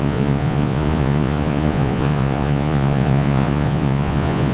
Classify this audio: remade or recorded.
remade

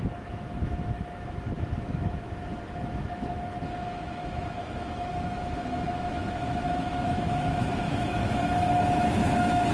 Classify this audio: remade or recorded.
remade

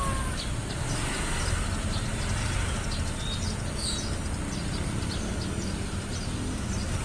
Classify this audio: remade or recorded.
recorded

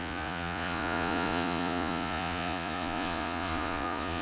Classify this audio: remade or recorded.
remade